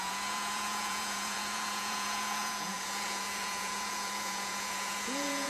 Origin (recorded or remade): remade